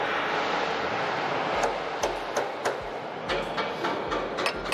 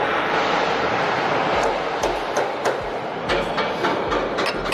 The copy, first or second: second